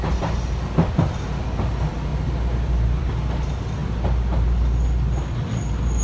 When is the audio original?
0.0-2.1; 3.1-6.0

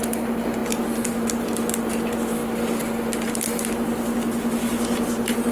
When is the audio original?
0.0-5.5

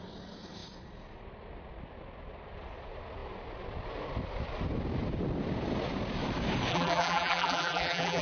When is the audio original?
0.0-6.7

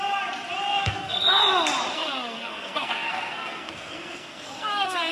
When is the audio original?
0.0-0.7; 1.4-1.9

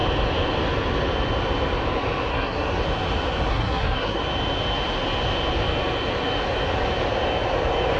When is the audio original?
0.0-2.3; 2.8-3.5; 4.2-8.0

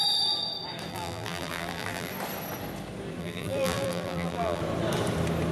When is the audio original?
0.0-0.9; 2.1-3.2; 4.6-5.5